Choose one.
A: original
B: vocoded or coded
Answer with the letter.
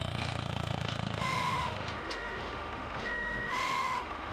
B